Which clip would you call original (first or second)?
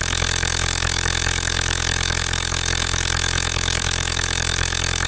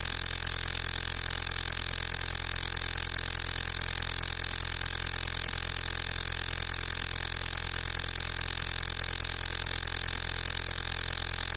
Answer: second